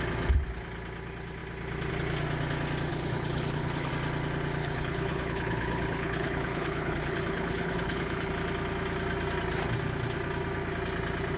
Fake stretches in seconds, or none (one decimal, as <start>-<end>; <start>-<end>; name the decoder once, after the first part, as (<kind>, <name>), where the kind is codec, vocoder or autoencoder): 2.9-3.9 (codec, HILCodec); 4.6-8.3